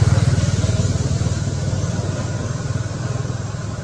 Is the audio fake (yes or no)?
no